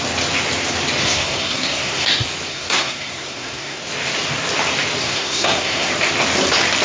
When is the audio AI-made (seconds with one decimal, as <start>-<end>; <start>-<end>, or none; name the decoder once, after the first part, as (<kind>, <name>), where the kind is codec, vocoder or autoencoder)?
1.0-2.1 (codec, SNAC); 2.5-3.8; 5.0-5.9